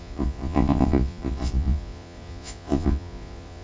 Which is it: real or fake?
fake